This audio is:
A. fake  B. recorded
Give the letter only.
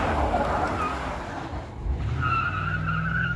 B